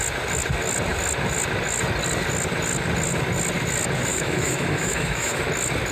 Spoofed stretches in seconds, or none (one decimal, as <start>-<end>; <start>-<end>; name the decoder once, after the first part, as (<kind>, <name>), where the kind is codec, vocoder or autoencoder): 4.1-5.4 (autoencoder, DAC-VAE)